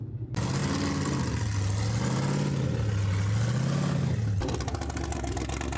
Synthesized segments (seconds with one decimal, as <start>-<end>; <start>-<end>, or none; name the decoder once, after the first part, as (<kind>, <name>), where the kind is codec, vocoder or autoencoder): none